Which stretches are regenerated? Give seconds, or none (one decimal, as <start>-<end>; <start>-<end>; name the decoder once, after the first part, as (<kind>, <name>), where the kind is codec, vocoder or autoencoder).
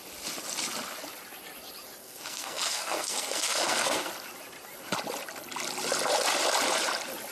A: 2.0-4.1 (codec, SNAC)